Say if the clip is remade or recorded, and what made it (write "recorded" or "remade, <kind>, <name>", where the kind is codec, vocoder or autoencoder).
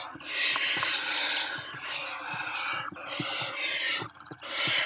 recorded